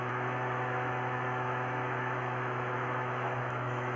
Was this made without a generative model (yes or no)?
no